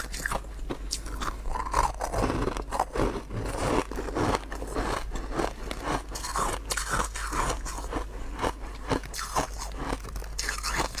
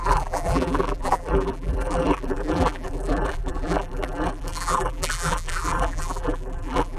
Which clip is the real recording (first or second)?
first